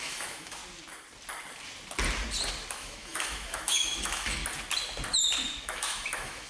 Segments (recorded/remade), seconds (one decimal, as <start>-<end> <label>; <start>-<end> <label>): 0.0-0.6 remade; 0.6-2.7 recorded; 2.7-4.4 remade; 4.4-5.6 recorded; 5.6-6.5 remade